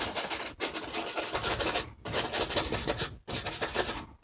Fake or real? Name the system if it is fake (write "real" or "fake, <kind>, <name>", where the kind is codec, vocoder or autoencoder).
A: real